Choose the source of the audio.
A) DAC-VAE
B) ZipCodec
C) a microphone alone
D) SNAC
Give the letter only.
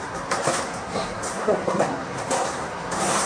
D